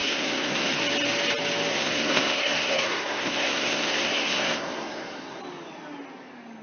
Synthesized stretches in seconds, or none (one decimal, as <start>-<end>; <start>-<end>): 0.0-0.8; 1.7-5.4